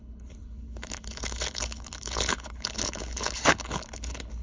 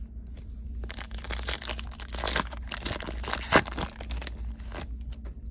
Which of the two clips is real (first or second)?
second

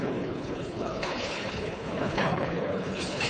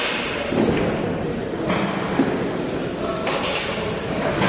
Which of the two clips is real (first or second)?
second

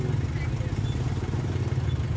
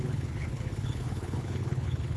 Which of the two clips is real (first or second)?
first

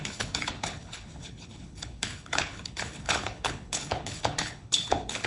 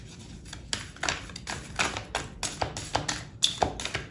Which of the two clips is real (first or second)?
second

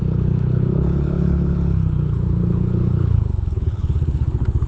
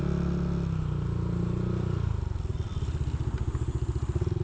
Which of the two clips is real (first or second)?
second